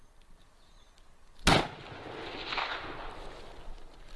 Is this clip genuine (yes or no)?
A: yes